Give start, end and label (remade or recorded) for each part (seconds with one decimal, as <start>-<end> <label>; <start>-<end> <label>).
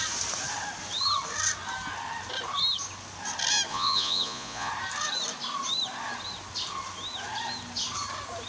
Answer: 0.0-3.7 recorded; 3.7-4.7 remade; 4.7-8.5 recorded